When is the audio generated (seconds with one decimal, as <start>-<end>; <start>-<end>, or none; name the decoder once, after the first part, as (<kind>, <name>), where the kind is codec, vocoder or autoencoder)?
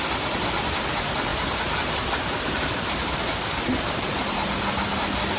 none